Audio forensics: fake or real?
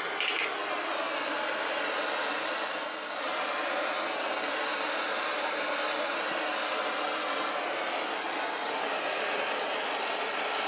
real